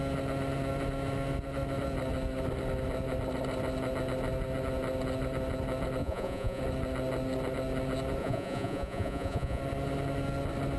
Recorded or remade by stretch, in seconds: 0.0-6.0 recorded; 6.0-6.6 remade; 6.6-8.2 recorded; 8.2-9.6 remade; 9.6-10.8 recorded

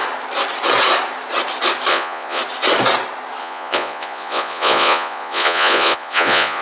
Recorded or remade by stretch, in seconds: 0.0-1.9 recorded; 1.9-2.4 remade; 2.4-3.4 recorded; 3.4-6.6 remade

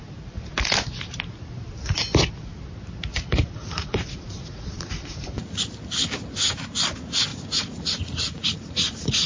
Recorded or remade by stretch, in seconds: 0.0-3.1 recorded; 3.1-5.5 remade; 5.5-7.3 recorded; 7.3-9.3 remade

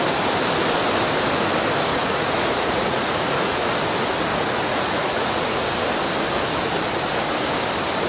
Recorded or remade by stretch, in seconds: 0.0-1.9 recorded; 1.9-3.7 remade; 3.7-4.3 recorded; 4.3-5.6 remade; 5.6-8.1 recorded

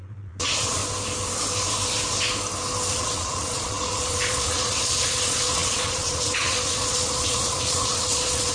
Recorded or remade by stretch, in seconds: 0.0-0.8 remade; 0.8-2.9 recorded; 2.9-8.5 remade

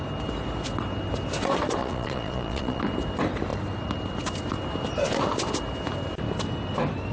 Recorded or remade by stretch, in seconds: 0.0-1.8 recorded; 1.8-2.8 remade; 2.8-7.1 recorded